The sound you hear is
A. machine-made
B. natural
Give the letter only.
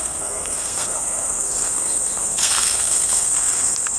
A